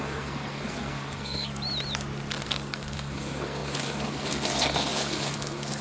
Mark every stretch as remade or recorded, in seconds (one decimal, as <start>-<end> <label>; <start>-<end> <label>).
0.0-1.5 remade; 1.5-2.4 recorded; 2.4-5.8 remade